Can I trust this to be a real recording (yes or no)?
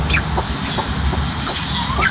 yes